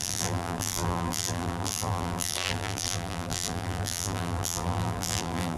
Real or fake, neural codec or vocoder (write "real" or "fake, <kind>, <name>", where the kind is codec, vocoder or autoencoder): fake, vocoder, BigVGAN v2